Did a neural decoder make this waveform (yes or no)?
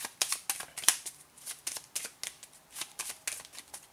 no